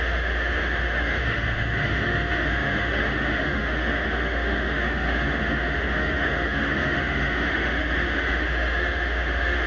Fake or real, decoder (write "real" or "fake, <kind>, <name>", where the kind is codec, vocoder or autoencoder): fake, autoencoder, DAC-VAE